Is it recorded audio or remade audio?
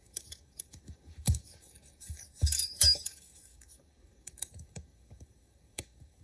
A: remade